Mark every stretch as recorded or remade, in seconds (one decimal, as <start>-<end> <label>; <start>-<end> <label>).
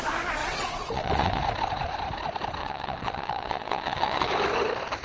0.0-0.4 recorded; 0.4-1.4 remade; 1.4-2.6 recorded; 2.6-4.3 remade; 4.3-5.0 recorded